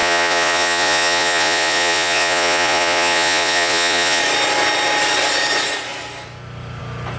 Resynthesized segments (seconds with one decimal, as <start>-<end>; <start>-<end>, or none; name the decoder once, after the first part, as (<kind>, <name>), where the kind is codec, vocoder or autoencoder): 0.0-4.2 (vocoder, Vocos)